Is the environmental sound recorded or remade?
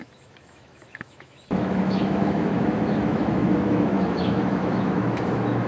remade